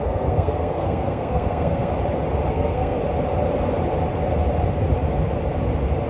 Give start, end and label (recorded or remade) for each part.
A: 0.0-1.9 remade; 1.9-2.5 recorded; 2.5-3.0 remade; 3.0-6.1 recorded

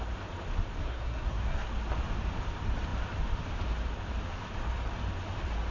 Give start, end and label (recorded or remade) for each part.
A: 0.0-0.8 recorded; 0.8-1.7 remade; 1.7-5.7 recorded

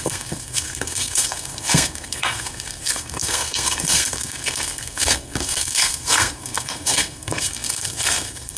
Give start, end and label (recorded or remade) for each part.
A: 0.0-8.6 remade

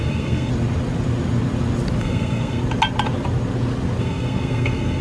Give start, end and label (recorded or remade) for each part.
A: 0.0-0.5 remade; 0.5-2.0 recorded; 2.0-2.6 remade; 2.6-4.0 recorded; 4.0-5.0 remade

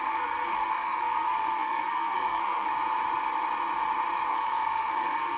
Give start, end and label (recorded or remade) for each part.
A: 0.0-2.7 remade; 2.7-4.3 recorded; 4.3-5.4 remade

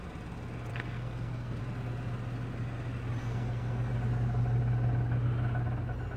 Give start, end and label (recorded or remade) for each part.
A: 0.0-0.7 recorded; 0.7-1.6 remade; 1.6-3.2 recorded; 3.2-3.9 remade; 3.9-6.2 recorded

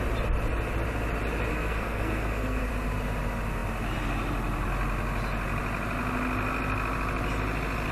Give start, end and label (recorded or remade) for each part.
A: 0.0-1.5 recorded; 1.5-2.7 remade; 2.7-7.9 recorded